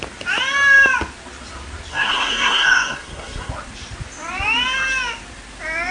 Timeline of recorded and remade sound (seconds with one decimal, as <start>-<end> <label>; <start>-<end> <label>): 0.0-1.9 recorded; 1.9-3.5 remade; 3.5-5.9 recorded